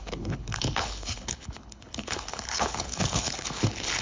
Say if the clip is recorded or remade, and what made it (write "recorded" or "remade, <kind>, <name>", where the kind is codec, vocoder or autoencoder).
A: remade, codec, HILCodec